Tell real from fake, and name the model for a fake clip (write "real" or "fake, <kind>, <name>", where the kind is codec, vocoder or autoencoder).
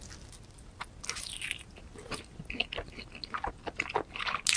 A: real